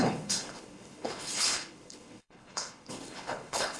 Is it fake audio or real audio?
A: fake